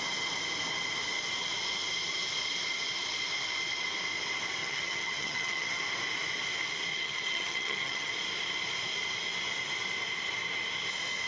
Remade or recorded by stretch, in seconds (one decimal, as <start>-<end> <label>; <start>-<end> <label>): 0.0-4.6 recorded; 4.6-5.8 remade; 5.8-6.9 recorded; 6.9-8.1 remade; 8.1-11.3 recorded